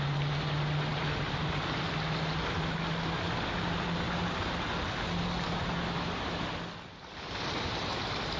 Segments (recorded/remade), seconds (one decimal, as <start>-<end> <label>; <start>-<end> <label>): 0.0-8.4 recorded